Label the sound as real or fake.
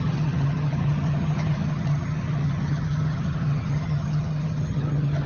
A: fake